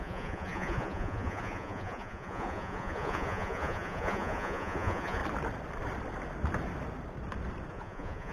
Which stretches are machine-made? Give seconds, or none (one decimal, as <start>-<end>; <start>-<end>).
0.0-5.2; 7.7-8.3